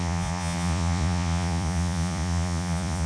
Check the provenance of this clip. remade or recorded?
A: remade